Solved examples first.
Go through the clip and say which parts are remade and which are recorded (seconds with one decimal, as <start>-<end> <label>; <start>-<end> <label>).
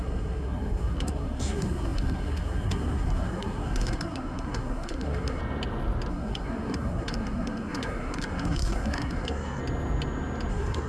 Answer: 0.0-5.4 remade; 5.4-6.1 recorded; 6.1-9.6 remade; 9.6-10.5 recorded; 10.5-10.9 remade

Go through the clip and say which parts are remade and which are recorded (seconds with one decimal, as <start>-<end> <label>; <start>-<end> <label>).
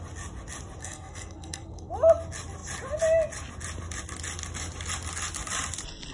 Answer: 0.0-0.8 recorded; 0.8-1.9 remade; 1.9-6.1 recorded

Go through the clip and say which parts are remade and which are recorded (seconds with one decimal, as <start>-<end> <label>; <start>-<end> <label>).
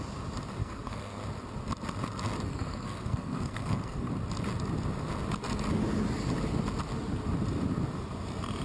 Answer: 0.0-0.6 recorded; 0.6-1.2 remade; 1.2-2.5 recorded; 2.5-4.1 remade; 4.1-8.6 recorded